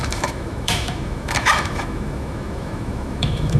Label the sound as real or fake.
fake